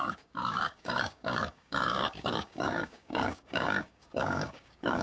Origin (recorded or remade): remade